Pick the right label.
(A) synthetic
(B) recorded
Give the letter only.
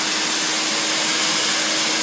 B